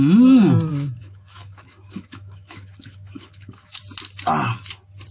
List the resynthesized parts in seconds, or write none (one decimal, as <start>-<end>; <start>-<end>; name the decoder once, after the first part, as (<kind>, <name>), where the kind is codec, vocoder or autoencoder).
0.7-3.8 (autoencoder, DAC-VAE)